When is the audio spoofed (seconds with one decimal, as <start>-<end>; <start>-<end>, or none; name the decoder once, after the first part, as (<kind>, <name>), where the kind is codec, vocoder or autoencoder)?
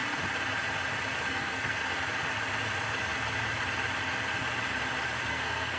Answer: 1.3-1.8 (codec, SNAC); 5.3-5.8